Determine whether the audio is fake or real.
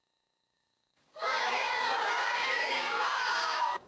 fake